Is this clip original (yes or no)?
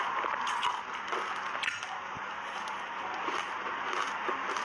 yes